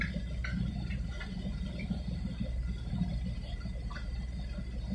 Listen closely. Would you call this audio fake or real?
real